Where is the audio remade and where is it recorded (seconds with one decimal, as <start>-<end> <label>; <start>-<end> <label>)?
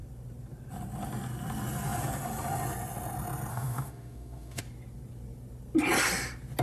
0.0-3.5 recorded; 3.5-4.6 remade; 4.6-6.6 recorded